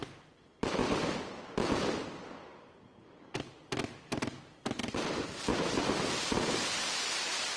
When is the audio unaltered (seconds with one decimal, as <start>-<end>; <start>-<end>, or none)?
0.0-4.8; 5.4-7.6